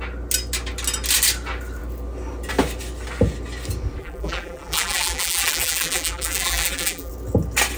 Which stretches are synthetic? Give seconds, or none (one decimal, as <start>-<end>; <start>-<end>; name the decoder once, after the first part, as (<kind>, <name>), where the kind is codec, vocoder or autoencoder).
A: 4.0-7.1 (vocoder, BigVGAN v2)